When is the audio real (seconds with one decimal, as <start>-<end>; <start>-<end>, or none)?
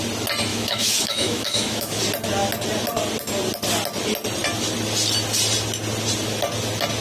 0.0-0.5; 2.0-7.0